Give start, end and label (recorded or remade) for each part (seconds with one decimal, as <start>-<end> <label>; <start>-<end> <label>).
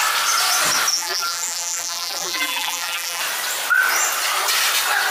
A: 0.0-0.9 recorded; 0.9-3.2 remade; 3.2-5.1 recorded